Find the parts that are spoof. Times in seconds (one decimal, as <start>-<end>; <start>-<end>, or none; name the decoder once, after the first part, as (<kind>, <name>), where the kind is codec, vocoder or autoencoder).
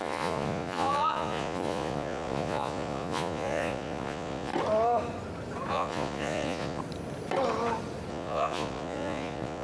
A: 0.0-4.5 (vocoder, Vocos); 5.7-6.8; 8.1-9.6